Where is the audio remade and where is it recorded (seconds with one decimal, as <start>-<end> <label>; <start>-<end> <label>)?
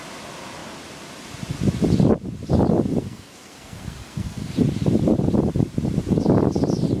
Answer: 0.0-3.0 recorded; 3.0-4.5 remade; 4.5-7.0 recorded